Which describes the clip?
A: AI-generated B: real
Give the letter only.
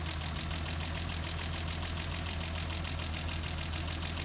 B